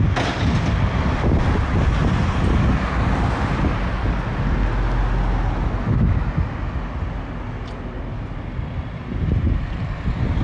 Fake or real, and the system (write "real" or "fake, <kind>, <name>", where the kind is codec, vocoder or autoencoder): real